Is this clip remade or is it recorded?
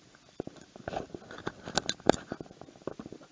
recorded